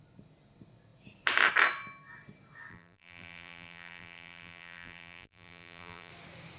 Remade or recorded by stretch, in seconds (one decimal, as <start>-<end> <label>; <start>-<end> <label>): 0.0-2.7 recorded; 2.7-6.1 remade; 6.1-6.6 recorded